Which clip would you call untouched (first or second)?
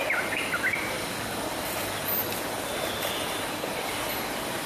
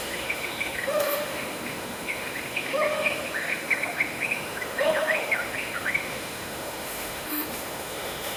first